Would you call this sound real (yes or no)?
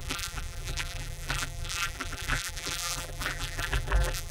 no